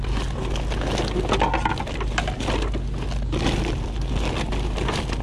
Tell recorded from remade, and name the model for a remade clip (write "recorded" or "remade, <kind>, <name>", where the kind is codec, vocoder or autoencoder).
recorded